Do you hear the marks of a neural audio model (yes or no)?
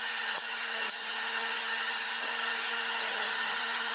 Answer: yes